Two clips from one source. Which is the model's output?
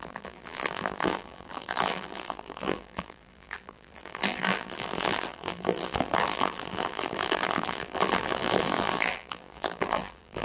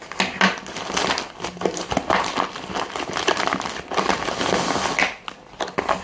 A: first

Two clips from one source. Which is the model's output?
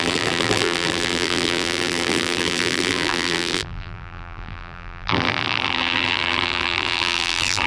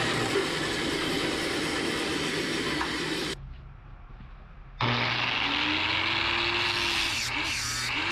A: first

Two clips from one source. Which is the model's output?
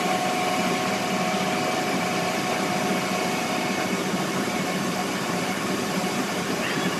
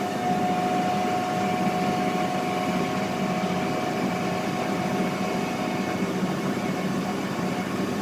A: first